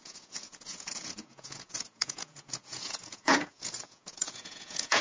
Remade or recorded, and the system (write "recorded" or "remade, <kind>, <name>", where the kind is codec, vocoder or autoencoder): remade, vocoder, Vocos